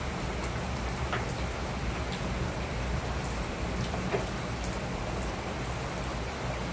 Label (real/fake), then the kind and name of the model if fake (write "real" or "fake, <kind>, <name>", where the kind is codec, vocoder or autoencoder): real